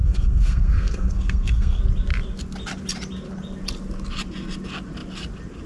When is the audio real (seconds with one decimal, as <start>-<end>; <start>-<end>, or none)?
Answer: 1.8-5.7